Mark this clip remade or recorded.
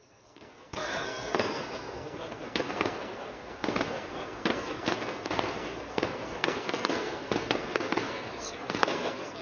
remade